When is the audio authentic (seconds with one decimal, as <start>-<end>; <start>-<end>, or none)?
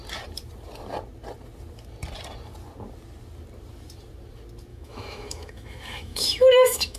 0.0-4.7